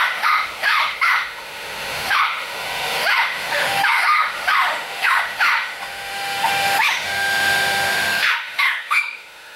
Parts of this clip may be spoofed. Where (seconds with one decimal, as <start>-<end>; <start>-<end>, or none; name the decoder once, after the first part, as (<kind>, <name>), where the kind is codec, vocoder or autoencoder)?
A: 0.0-9.6 (autoencoder, DAC-VAE)

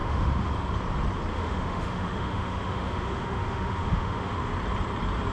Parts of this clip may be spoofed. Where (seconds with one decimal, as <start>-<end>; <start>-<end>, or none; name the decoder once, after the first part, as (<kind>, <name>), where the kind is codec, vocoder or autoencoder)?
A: 0.0-0.5 (autoencoder, DAC-VAE); 1.3-4.5

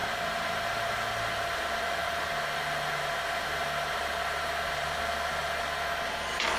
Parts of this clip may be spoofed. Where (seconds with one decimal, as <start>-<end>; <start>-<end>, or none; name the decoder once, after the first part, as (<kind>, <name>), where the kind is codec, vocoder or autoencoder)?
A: none

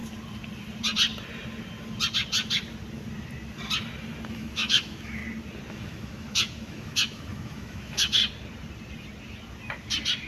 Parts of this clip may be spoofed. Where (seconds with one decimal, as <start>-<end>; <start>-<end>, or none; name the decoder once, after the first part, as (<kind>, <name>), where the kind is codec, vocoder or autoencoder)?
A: 4.3-5.2 (autoencoder, DAC-VAE); 5.7-8.2